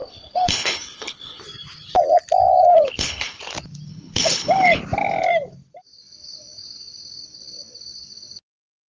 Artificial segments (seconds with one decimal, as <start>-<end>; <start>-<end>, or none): 0.0-1.4; 2.7-3.4; 3.9-4.8